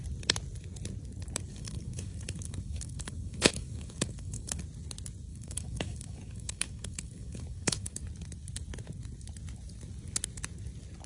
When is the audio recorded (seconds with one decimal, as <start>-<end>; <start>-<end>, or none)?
0.0-1.5; 4.6-5.3; 8.0-11.1